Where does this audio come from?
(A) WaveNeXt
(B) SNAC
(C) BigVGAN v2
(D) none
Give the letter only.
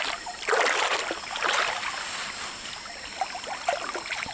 D